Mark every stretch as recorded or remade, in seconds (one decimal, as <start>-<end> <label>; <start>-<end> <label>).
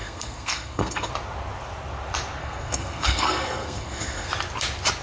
0.0-1.1 remade; 1.1-2.4 recorded; 2.4-4.3 remade; 4.3-5.0 recorded